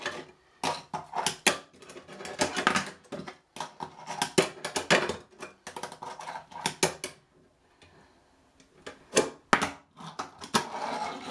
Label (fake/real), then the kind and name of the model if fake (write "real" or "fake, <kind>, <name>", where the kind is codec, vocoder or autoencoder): real